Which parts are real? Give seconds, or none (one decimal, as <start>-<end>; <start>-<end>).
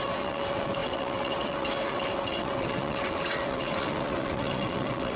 none